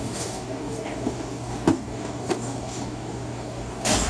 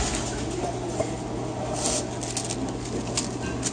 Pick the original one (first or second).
second